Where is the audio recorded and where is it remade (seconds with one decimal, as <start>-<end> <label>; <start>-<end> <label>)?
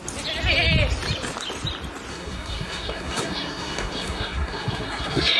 0.0-2.1 recorded; 2.1-5.4 remade